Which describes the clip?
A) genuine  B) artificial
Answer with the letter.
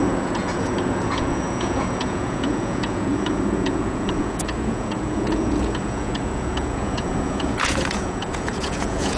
B